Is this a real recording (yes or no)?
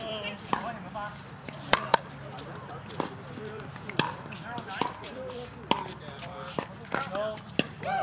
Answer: no